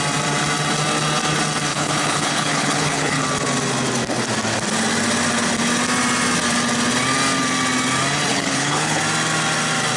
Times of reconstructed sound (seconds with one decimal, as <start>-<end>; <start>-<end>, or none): 1.7-3.2; 8.3-9.0